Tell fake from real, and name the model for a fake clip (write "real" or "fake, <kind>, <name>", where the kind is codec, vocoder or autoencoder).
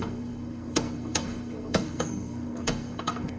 fake, codec, SNAC